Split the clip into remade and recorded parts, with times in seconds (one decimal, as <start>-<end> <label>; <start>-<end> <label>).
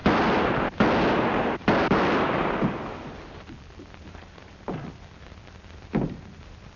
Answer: 0.0-1.9 recorded; 1.9-6.8 remade